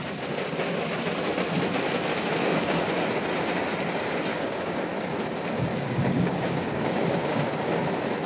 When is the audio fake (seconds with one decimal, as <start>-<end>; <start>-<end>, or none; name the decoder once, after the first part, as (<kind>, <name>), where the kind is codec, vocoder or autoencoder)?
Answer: 2.1-2.9 (codec, DAC); 4.3-4.8; 5.7-7.7